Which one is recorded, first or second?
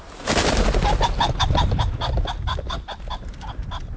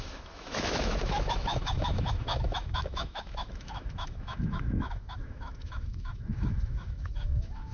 first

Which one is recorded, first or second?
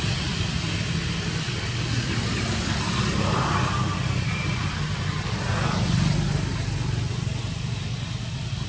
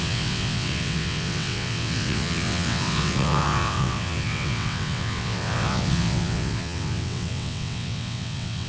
first